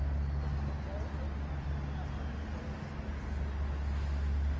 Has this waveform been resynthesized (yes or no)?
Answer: no